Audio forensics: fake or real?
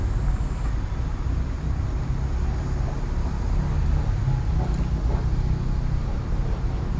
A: real